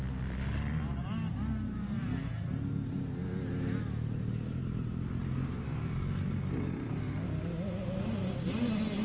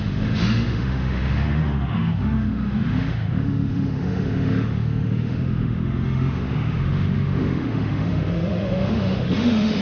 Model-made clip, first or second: second